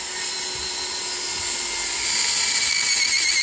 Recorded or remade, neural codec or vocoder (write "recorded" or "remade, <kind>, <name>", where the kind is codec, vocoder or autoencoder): recorded